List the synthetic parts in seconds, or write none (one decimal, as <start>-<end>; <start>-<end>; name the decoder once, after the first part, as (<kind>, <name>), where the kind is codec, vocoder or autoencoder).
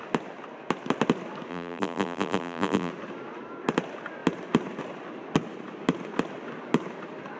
1.5-2.9 (vocoder, BigVGAN v2)